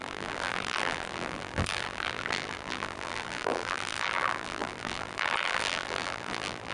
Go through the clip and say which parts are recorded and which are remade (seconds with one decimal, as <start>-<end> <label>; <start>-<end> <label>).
0.0-6.7 remade